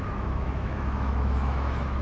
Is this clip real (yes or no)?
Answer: no